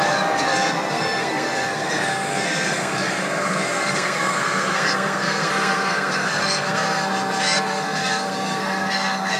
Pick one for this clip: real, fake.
fake